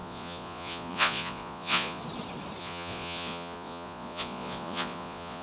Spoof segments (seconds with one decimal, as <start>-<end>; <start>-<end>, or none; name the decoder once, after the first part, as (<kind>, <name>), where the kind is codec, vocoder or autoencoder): 0.0-2.0 (vocoder, Vocos); 2.6-5.4